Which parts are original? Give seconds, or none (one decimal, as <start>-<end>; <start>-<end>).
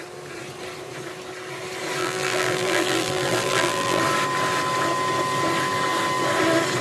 0.0-2.0; 4.0-6.8